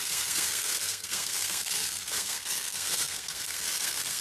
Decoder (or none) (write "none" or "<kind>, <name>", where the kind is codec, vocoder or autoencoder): codec, SNAC